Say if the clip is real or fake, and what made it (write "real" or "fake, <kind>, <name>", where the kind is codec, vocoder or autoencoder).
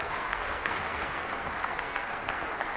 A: fake, codec, SNAC